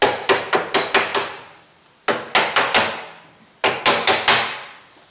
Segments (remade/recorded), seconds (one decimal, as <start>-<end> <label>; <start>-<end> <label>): 0.0-5.1 recorded